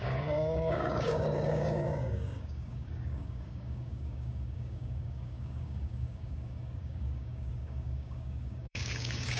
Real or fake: fake